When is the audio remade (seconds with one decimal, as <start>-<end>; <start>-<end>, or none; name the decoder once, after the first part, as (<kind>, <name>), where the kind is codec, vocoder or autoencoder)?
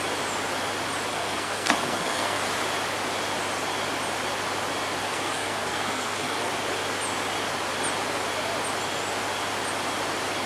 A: 1.1-2.4 (codec, SNAC); 5.0-6.5